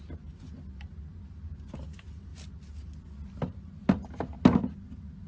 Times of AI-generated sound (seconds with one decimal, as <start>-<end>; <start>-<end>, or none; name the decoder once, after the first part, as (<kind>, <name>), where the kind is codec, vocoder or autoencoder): none